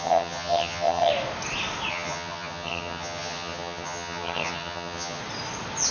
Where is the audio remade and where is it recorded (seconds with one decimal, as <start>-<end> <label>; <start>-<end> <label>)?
0.0-1.1 remade; 1.1-1.9 recorded; 1.9-5.2 remade; 5.2-5.9 recorded